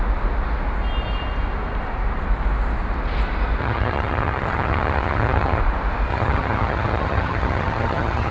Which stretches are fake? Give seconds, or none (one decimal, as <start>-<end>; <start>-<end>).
3.6-5.6; 6.1-8.3